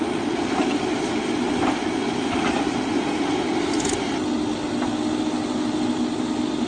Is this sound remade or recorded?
recorded